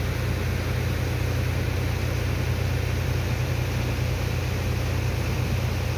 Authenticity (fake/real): real